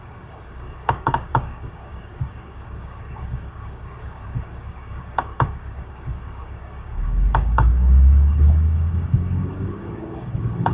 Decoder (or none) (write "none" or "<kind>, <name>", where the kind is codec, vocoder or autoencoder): codec, DAC